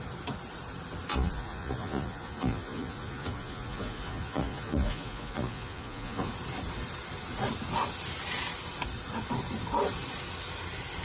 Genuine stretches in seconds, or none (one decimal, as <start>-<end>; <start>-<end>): 0.0-1.1; 6.3-11.0